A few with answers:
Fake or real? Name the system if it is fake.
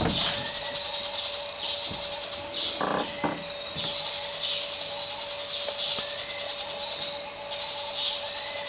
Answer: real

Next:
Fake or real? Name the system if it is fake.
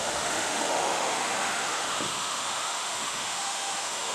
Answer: fake, autoencoder, DAC-VAE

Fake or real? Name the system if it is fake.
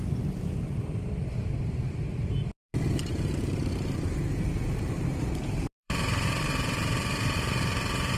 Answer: fake, vocoder, BigVGAN v2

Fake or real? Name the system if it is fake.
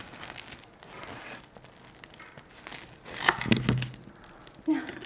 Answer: real